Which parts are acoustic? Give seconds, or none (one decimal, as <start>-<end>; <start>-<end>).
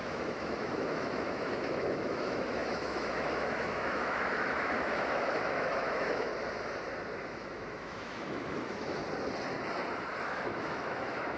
6.3-7.1; 9.0-10.2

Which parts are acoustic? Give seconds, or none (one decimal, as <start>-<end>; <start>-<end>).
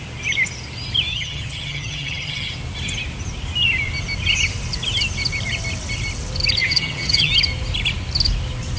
0.0-1.1; 2.5-6.6; 7.3-8.8